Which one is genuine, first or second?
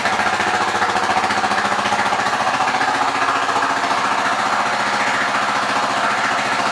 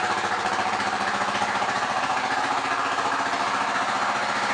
first